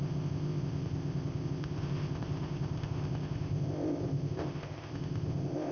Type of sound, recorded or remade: remade